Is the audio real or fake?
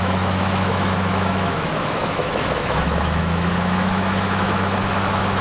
fake